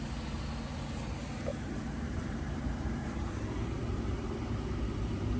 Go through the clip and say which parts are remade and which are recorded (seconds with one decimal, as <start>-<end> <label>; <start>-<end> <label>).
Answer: 0.0-2.2 recorded; 2.2-5.4 remade